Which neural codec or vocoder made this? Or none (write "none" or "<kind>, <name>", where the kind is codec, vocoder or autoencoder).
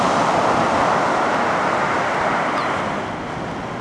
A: none